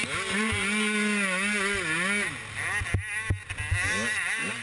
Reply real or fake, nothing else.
real